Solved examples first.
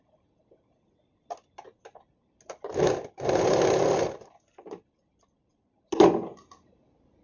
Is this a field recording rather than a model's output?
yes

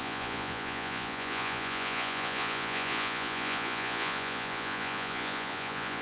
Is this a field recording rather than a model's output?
no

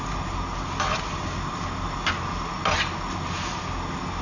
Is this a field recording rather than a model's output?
yes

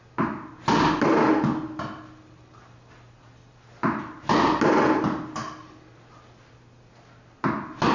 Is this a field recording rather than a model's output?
yes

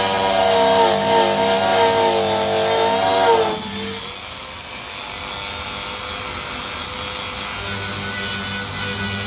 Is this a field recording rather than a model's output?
yes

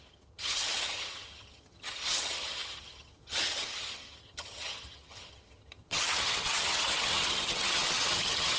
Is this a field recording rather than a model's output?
no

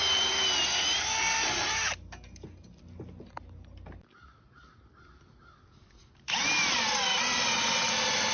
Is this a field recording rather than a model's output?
yes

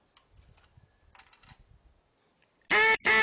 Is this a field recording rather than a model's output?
yes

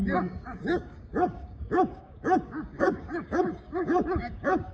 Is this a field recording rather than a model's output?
no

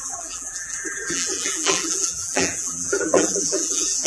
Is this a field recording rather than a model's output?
no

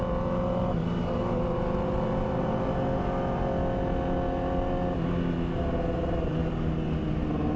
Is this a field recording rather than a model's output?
yes